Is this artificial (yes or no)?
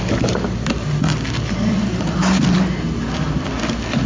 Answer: yes